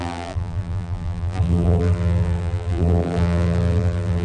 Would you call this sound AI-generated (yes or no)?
yes